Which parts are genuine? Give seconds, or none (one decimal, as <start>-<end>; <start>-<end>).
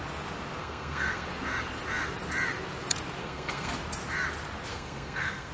0.0-0.6; 1.3-3.2; 3.7-4.7